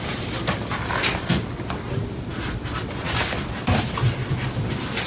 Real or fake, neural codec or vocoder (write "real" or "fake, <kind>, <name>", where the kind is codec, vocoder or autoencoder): real